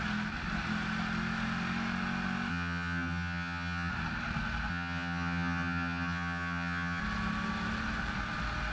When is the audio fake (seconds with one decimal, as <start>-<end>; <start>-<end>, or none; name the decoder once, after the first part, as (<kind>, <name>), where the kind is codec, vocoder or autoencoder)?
2.5-3.9 (vocoder, HiFi-GAN); 4.7-7.0

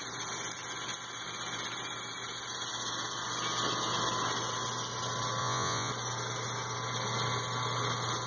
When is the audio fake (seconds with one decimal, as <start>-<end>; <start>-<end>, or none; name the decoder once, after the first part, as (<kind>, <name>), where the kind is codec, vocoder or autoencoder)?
5.4-5.9 (vocoder, Vocos)

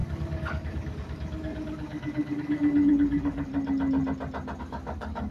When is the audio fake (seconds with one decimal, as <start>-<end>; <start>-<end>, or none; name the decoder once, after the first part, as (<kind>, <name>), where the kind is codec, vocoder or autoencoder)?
0.0-3.5 (codec, DAC); 4.6-5.3

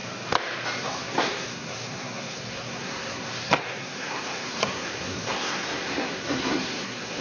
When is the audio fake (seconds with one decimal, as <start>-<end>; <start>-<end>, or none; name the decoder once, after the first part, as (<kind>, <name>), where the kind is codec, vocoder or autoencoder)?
0.8-7.2 (codec, SNAC)

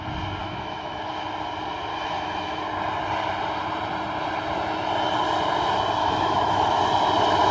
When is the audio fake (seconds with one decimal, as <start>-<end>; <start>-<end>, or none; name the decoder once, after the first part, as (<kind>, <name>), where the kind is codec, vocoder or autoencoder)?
0.4-1.0 (autoencoder, DAC-VAE); 1.9-2.6; 6.0-6.8

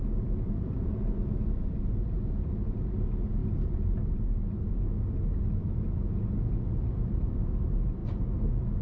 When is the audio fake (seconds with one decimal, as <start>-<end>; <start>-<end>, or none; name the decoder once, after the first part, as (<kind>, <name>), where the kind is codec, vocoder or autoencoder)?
none

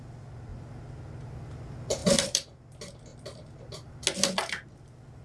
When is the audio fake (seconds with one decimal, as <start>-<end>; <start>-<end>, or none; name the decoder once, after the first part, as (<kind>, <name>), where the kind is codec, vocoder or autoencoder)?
2.0-2.6 (vocoder, BigVGAN v2); 3.1-3.9